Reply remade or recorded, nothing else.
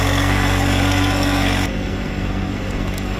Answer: remade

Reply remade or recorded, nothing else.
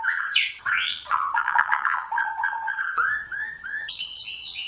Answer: remade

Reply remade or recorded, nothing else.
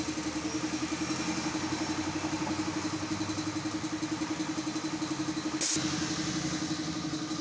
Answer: recorded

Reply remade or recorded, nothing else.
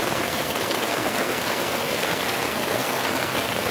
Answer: remade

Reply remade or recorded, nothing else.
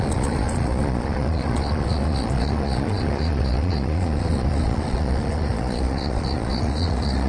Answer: remade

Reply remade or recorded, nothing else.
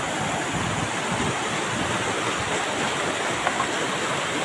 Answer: recorded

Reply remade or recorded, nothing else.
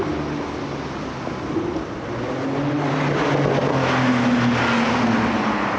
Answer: recorded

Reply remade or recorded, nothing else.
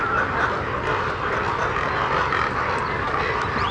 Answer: recorded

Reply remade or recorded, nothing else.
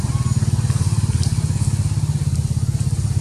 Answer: recorded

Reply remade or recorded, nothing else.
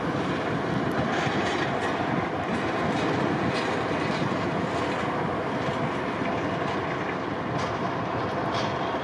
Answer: recorded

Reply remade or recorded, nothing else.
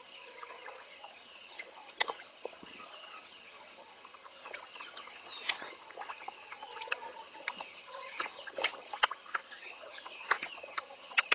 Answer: remade